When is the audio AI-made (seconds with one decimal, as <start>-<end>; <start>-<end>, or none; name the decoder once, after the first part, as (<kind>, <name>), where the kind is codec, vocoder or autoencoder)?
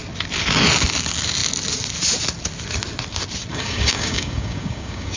3.5-5.2 (codec, DAC)